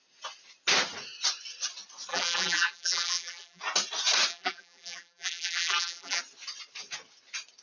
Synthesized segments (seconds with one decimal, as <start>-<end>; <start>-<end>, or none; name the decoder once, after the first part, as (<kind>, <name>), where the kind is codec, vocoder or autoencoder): 2.1-3.6 (vocoder, BigVGAN v2); 4.3-6.2